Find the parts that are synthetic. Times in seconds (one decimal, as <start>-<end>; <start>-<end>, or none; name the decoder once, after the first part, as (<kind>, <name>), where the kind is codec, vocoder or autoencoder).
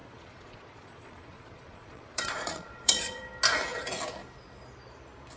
0.0-3.2 (vocoder, Vocos)